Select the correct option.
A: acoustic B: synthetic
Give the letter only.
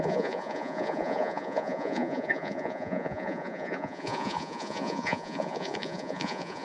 B